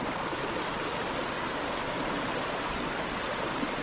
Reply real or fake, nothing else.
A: real